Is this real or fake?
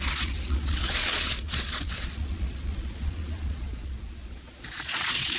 fake